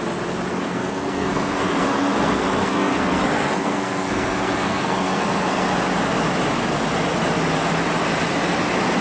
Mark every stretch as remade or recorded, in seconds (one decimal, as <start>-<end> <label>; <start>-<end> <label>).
0.0-0.5 recorded; 0.5-5.7 remade; 5.7-9.0 recorded